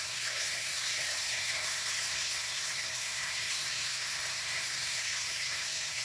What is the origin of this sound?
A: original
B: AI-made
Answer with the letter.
B